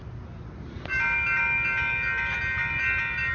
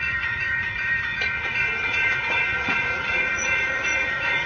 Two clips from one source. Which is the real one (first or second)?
first